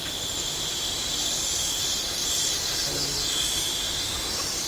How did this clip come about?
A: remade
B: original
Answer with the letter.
B